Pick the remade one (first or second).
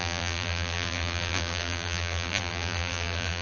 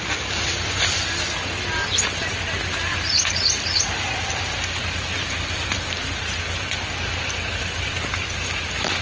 first